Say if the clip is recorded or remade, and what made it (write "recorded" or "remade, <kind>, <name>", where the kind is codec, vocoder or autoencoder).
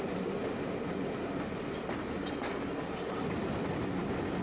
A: recorded